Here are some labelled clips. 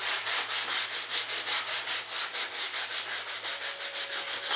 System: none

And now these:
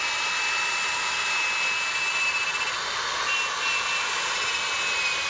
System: none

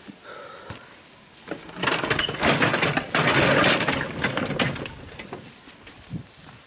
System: none